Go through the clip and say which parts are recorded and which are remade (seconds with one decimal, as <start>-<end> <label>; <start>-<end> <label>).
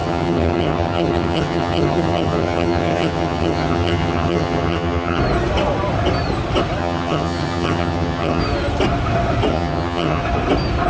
0.0-5.2 remade; 5.2-6.8 recorded; 6.8-8.4 remade; 8.4-9.5 recorded; 9.5-10.2 remade; 10.2-10.9 recorded